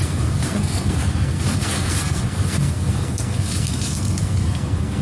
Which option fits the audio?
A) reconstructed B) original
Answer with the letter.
A